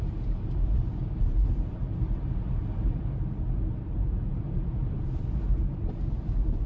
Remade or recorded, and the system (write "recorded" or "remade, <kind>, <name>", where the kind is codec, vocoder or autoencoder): remade, vocoder, BigVGAN v2